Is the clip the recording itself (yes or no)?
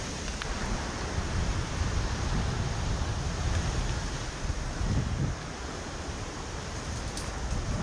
yes